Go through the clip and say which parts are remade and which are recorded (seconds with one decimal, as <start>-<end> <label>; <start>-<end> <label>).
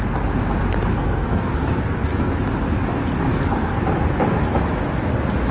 0.0-0.9 recorded; 0.9-2.4 remade; 2.4-3.3 recorded; 3.3-3.8 remade; 3.8-5.5 recorded